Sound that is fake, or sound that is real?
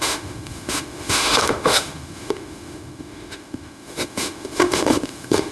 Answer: fake